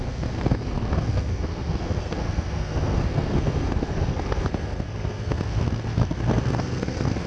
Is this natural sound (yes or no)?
no